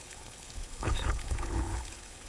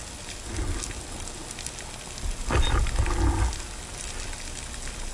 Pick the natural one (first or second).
second